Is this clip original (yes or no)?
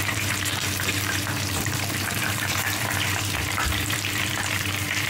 no